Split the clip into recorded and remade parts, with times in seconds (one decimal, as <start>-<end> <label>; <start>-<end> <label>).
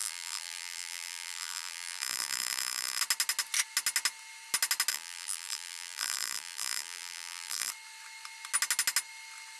0.0-3.0 remade; 3.0-4.9 recorded; 4.9-7.7 remade; 7.7-9.6 recorded